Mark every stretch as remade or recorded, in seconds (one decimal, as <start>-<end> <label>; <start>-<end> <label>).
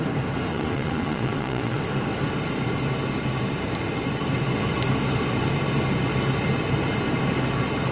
0.0-0.5 recorded; 0.5-1.8 remade; 1.8-7.9 recorded